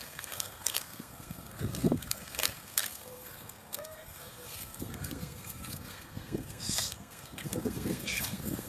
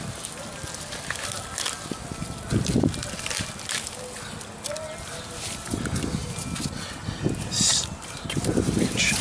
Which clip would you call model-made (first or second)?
first